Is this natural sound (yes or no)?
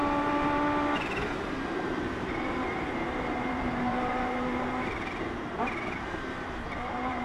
no